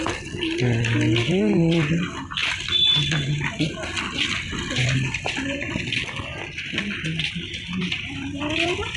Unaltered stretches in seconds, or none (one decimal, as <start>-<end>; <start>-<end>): 0.0-9.0

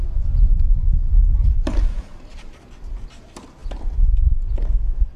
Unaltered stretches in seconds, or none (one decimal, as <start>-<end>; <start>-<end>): 0.0-0.5; 1.1-5.2

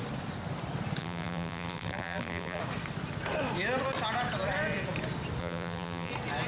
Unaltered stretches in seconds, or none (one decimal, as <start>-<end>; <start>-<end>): 0.0-1.0; 2.6-5.4; 6.1-6.5

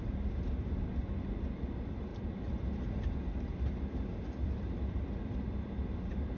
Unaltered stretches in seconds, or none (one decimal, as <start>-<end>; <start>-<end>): 2.1-3.8